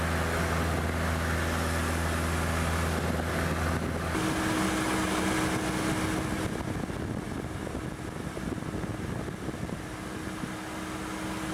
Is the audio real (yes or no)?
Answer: yes